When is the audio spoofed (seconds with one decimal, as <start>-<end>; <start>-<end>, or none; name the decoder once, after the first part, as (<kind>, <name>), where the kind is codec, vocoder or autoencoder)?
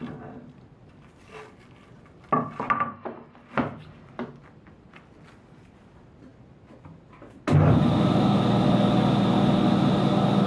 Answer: none